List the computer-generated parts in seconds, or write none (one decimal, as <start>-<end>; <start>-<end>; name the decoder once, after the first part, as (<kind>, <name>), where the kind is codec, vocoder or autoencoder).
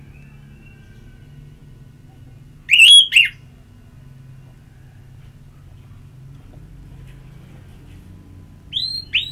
none